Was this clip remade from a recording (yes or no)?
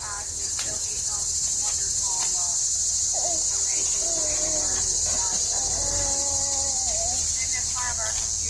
no